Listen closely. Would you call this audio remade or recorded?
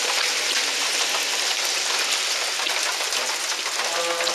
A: recorded